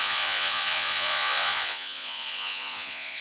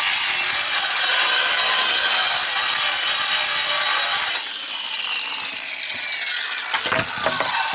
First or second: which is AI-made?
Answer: first